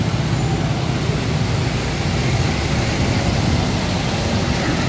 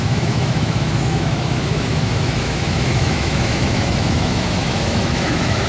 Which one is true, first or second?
first